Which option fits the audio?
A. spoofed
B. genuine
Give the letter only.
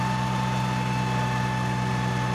B